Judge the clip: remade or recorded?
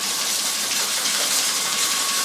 remade